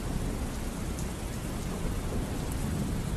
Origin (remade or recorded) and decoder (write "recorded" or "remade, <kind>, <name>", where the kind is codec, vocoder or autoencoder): recorded